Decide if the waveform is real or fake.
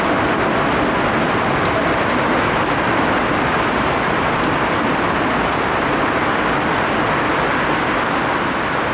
real